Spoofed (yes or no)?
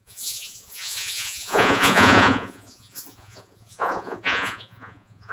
yes